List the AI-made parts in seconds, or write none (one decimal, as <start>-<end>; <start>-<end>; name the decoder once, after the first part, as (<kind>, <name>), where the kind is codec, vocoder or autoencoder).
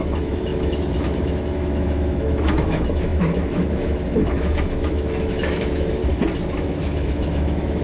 0.0-6.0 (autoencoder, DAC-VAE); 6.5-7.8